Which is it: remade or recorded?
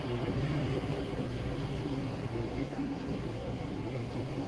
remade